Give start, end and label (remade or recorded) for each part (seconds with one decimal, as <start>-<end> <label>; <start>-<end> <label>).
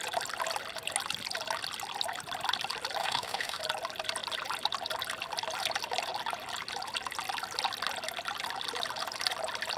0.0-3.0 recorded; 3.0-3.6 remade; 3.6-9.8 recorded